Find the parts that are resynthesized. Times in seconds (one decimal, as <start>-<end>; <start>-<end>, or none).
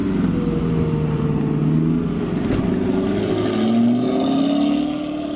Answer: none